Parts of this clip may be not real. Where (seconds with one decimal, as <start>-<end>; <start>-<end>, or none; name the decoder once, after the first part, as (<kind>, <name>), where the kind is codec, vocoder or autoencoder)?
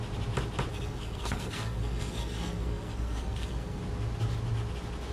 0.7-3.8 (codec, SNAC)